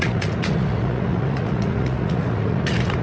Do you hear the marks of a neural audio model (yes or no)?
yes